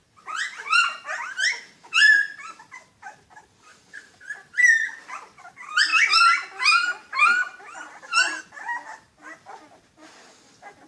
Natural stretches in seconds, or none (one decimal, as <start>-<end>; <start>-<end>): 2.1-3.7; 5.4-10.9